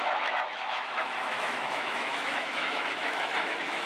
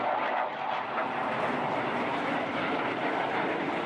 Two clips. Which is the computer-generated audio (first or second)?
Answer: first